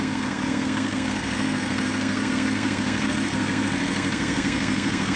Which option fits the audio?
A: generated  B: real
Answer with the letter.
A